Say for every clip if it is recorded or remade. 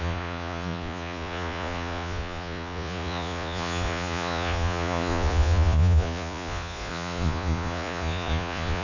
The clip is remade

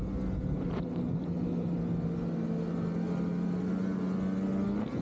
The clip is recorded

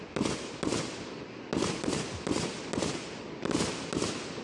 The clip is recorded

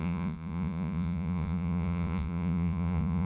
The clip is remade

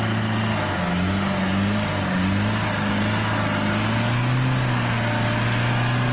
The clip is recorded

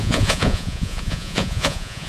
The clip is remade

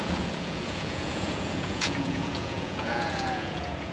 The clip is remade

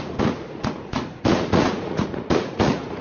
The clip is remade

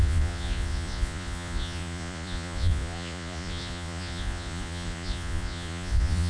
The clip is remade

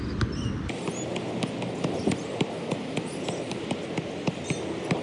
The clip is recorded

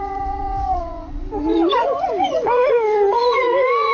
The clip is remade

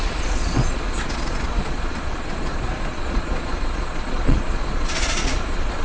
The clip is remade